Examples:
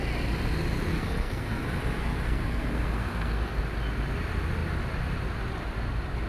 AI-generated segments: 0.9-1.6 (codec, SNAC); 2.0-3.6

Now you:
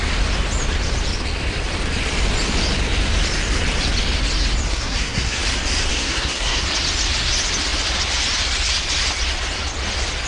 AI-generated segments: 4.7-5.4 (codec, SNAC); 5.9-6.6